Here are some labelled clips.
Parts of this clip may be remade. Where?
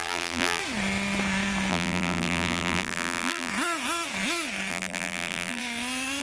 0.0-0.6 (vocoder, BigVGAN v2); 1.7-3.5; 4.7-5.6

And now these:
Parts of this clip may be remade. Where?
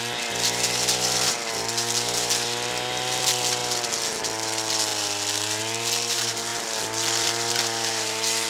0.0-3.6 (vocoder, BigVGAN v2); 4.2-8.5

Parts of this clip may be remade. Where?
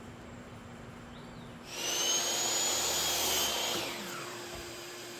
0.0-1.1 (vocoder, BigVGAN v2); 4.2-5.2